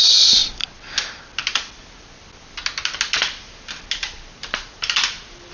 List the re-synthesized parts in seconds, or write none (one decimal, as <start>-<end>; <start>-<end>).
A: none